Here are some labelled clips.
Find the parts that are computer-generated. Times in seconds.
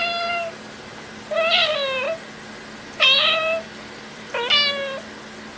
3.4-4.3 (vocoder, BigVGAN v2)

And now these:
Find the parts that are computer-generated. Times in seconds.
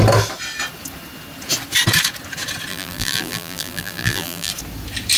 2.7-4.5 (vocoder, BigVGAN v2)